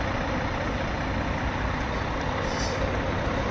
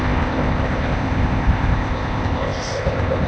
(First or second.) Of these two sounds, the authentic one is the first